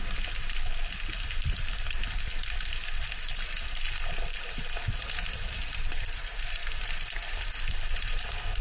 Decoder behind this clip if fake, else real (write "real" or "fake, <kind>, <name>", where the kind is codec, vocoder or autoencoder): real